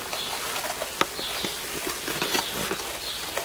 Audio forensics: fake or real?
real